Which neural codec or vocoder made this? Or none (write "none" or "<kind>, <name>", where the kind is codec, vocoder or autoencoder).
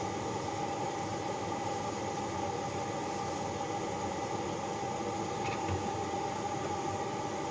none